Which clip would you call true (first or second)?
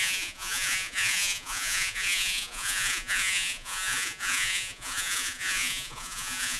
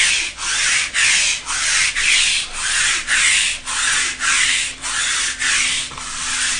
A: second